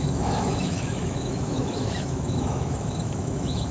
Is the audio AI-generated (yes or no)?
yes